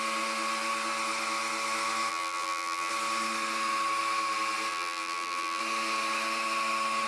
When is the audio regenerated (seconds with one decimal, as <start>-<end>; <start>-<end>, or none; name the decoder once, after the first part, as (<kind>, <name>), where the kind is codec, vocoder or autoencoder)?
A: 2.1-2.9 (vocoder, BigVGAN v2); 4.7-5.6